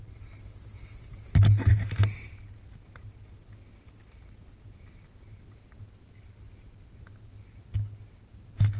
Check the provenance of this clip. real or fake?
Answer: real